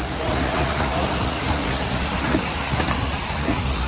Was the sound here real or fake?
fake